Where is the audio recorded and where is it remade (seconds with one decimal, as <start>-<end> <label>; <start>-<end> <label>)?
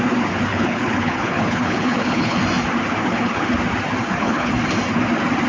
0.0-0.5 recorded; 0.5-2.4 remade; 2.4-3.0 recorded; 3.0-3.5 remade; 3.5-4.0 recorded; 4.0-4.5 remade; 4.5-5.5 recorded